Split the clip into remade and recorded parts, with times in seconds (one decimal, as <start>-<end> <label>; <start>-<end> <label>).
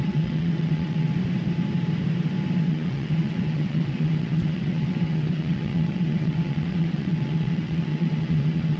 0.0-1.1 remade; 1.1-2.6 recorded; 2.6-8.8 remade